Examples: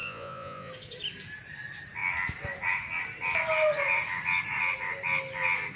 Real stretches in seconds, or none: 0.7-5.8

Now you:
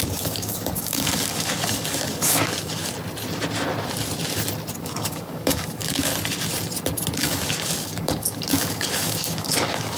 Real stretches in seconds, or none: 2.8-4.8; 6.1-7.2

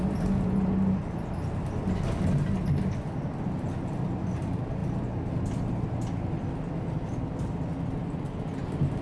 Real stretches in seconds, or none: 0.0-7.3; 7.9-9.0